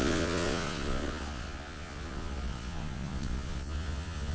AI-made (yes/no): yes